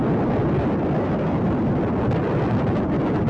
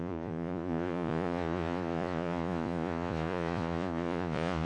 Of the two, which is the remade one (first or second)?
second